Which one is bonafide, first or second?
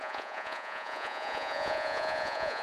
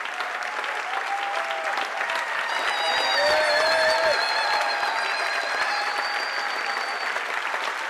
second